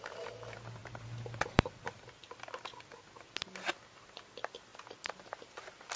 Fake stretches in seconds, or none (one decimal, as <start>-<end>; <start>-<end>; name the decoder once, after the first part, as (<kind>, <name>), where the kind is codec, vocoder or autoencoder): none

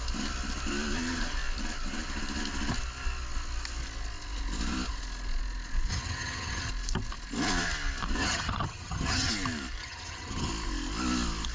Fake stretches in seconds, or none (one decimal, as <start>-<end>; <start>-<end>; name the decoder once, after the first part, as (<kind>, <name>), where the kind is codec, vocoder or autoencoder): 5.9-6.7 (vocoder, HiFi-GAN); 8.2-9.3; 9.8-10.5

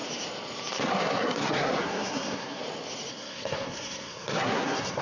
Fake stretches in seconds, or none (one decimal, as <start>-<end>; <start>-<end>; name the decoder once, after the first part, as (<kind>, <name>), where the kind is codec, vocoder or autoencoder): 0.9-2.6 (codec, SNAC); 3.1-5.0

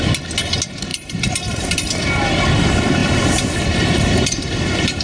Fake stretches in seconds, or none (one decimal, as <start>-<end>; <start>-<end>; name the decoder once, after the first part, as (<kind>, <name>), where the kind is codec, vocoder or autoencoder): 0.9-1.9 (vocoder, BigVGAN v2); 3.0-5.0

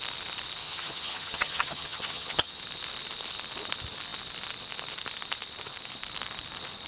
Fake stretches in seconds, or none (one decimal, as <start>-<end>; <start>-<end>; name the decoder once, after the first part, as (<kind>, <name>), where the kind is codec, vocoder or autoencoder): 0.6-2.6 (vocoder, HiFi-GAN)

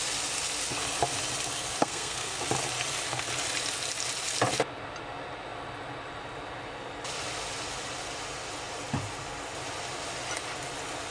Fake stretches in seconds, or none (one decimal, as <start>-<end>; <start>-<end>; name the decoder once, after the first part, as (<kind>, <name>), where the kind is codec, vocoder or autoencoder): 1.8-2.4 (codec, SNAC)

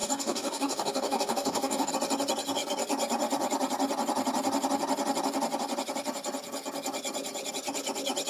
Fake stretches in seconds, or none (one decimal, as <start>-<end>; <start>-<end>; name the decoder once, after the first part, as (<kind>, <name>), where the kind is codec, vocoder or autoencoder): 0.0-1.9 (codec, DAC)

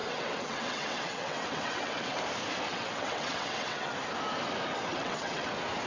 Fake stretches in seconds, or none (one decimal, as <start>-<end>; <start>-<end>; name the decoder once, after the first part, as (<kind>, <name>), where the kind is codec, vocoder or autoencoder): 0.0-2.2 (vocoder, WaveNeXt); 2.7-3.9; 4.9-5.5